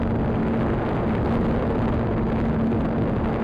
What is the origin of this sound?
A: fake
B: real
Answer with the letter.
B